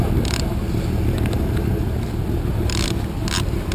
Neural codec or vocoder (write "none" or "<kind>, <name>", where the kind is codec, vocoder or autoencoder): none